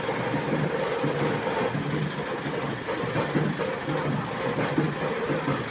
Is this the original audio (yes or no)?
yes